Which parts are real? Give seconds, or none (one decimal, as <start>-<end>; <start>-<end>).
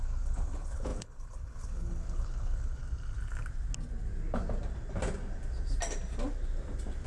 2.8-7.1